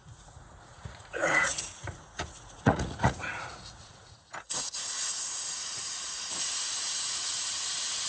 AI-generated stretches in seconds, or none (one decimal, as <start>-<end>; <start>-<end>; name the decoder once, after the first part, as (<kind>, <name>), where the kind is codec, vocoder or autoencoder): 0.0-8.1 (vocoder, Vocos)